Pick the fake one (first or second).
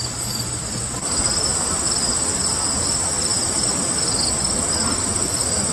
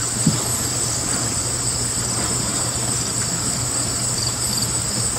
second